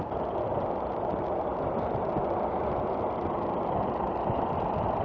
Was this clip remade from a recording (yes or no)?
no